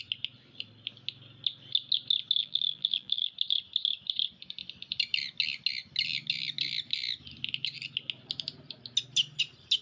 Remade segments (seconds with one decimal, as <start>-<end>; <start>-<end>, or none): 2.4-3.3